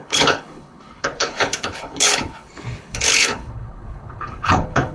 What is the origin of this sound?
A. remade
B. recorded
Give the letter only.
A